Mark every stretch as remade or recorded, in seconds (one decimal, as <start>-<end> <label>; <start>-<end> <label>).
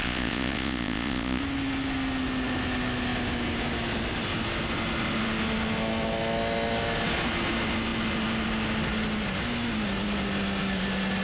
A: 0.0-1.4 remade; 1.4-11.2 recorded